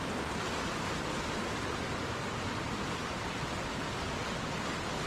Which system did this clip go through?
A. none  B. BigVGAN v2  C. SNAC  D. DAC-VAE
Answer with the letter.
A